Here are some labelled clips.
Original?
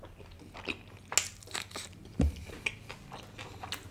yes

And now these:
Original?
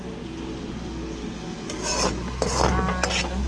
yes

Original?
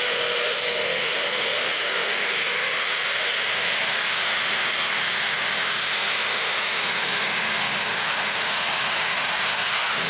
no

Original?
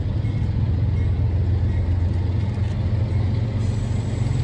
yes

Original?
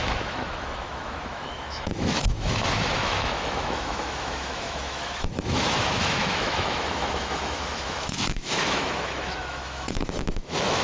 no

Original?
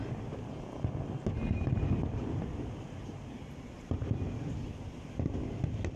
yes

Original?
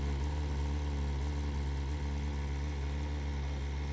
yes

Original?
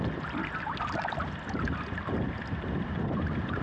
yes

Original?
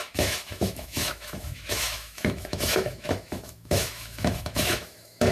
no